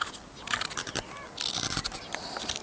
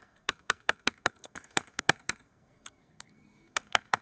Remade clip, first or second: second